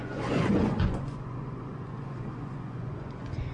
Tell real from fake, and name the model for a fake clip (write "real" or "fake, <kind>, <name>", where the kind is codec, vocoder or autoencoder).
fake, vocoder, Vocos